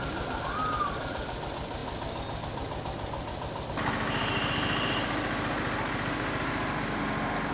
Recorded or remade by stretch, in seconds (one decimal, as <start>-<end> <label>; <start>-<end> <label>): 0.0-7.5 recorded